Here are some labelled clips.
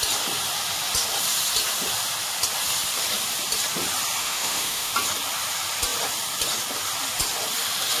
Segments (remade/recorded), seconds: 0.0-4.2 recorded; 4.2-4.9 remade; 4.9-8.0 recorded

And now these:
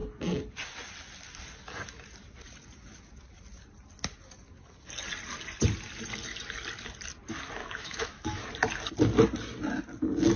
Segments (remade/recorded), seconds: 0.0-7.6 recorded; 7.6-8.5 remade; 8.5-10.4 recorded

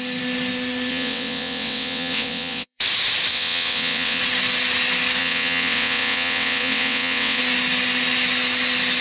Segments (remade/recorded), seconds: 0.0-0.9 recorded; 0.9-2.8 remade; 2.8-3.3 recorded; 3.3-4.2 remade; 4.2-5.2 recorded; 5.2-7.4 remade; 7.4-9.0 recorded

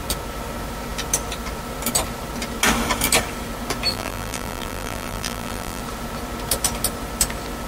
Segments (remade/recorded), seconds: 0.0-3.9 recorded; 3.9-5.8 remade; 5.8-7.7 recorded

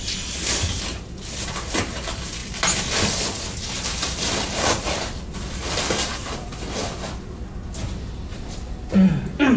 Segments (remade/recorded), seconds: 0.0-2.4 recorded; 2.4-7.1 remade; 7.1-9.6 recorded

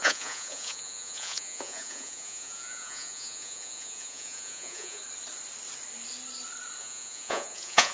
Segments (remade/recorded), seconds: 0.0-5.0 remade; 5.0-6.8 recorded; 6.8-7.9 remade

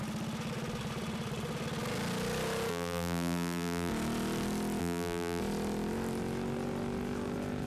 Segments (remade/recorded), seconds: 0.0-2.7 recorded; 2.7-3.9 remade; 3.9-4.8 recorded; 4.8-5.4 remade; 5.4-7.7 recorded